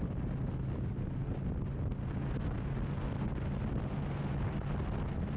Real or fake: real